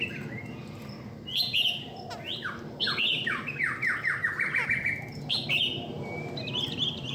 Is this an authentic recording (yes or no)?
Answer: yes